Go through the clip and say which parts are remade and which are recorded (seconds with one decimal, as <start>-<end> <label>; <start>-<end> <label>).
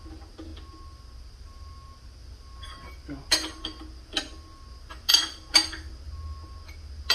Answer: 0.0-7.1 recorded